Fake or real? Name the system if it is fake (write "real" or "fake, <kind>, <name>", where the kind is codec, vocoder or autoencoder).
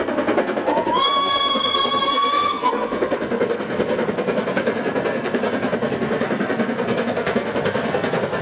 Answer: fake, codec, SNAC